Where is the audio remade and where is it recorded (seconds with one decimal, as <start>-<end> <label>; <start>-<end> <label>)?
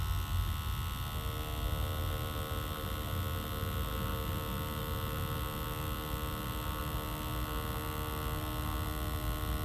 0.0-9.6 recorded